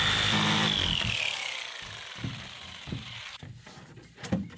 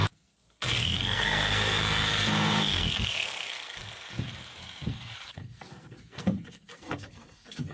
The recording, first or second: first